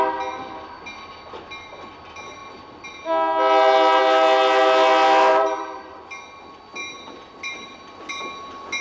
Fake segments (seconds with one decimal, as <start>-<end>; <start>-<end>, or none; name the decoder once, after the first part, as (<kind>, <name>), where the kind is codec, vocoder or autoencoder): 5.3-5.9 (vocoder, BigVGAN v2); 6.8-8.2